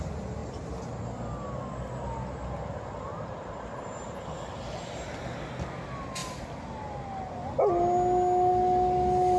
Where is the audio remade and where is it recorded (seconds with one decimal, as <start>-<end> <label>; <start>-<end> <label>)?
0.0-0.4 recorded; 0.4-1.0 remade; 1.0-3.1 recorded; 3.1-4.3 remade; 4.3-9.4 recorded